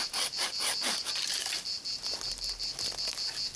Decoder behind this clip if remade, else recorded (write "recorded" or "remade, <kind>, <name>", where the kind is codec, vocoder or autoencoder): recorded